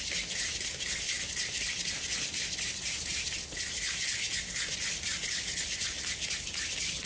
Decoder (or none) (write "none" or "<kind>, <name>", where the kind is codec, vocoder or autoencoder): none